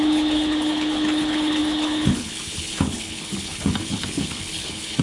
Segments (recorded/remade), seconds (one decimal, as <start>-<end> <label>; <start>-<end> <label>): 0.0-5.0 remade